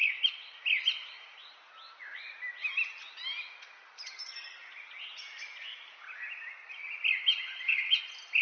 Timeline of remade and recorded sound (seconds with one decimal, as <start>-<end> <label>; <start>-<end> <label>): 0.0-7.3 recorded; 7.3-8.0 remade; 8.0-8.4 recorded